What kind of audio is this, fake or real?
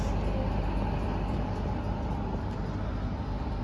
real